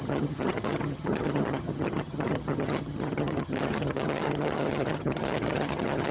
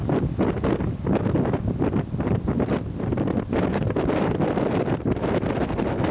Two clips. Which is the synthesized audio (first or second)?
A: first